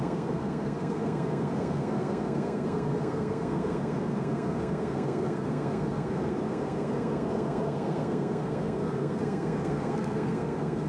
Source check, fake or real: fake